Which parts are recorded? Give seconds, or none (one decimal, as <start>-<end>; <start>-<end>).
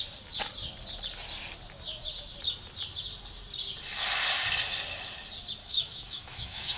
0.0-5.6